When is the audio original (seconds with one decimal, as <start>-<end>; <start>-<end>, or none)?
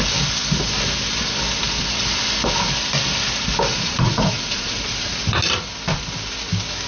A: 0.0-3.7; 5.2-6.9